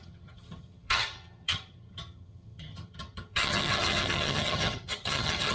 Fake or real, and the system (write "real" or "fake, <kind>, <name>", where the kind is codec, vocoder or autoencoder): fake, vocoder, HiFi-GAN